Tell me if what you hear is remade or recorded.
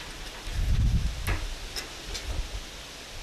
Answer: recorded